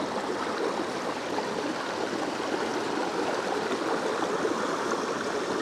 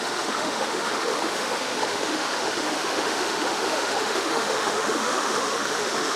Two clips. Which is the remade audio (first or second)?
second